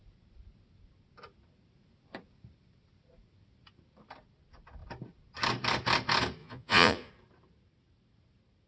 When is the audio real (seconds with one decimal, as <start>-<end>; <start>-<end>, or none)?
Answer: 0.0-6.4; 7.1-8.7